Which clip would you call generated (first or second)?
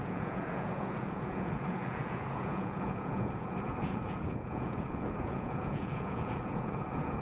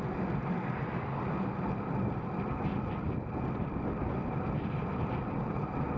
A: first